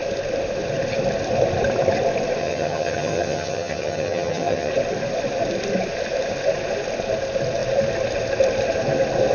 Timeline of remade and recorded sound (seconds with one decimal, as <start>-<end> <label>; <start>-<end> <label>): 0.0-2.4 recorded; 2.4-4.7 remade; 4.7-9.3 recorded